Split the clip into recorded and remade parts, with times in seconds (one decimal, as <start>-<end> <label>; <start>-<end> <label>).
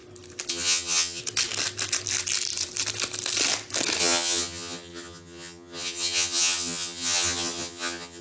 0.0-0.5 recorded; 0.5-1.2 remade; 1.2-4.0 recorded; 4.0-8.2 remade